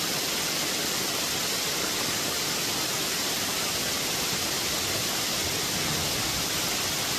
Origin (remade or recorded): recorded